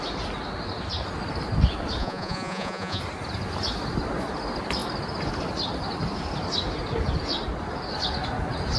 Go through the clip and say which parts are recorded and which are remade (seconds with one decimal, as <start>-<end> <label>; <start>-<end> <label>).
0.0-2.0 recorded; 2.0-3.0 remade; 3.0-8.8 recorded